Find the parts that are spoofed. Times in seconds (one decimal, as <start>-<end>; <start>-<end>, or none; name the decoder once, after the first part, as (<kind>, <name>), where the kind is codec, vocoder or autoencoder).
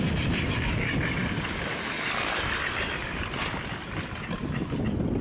none